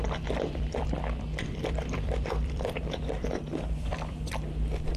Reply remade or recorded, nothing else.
remade